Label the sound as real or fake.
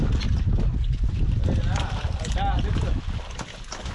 real